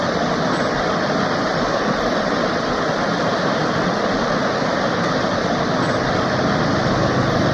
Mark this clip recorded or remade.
recorded